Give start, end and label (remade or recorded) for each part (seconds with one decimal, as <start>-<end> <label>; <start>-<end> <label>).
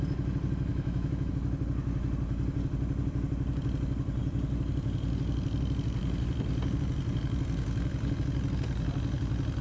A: 0.0-0.7 recorded; 0.7-1.3 remade; 1.3-9.6 recorded